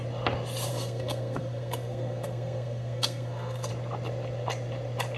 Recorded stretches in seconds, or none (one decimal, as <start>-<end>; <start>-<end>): 0.0-0.7; 3.7-5.2